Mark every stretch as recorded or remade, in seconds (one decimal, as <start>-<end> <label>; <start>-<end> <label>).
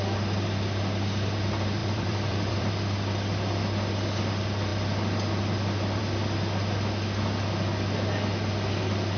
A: 0.0-1.8 recorded; 1.8-2.7 remade; 2.7-9.2 recorded